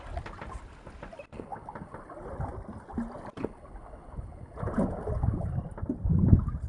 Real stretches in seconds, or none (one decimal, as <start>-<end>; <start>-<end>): 0.0-6.7